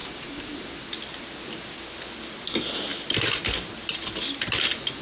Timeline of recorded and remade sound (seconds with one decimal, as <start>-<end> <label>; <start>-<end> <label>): 0.0-0.7 remade; 0.7-5.0 recorded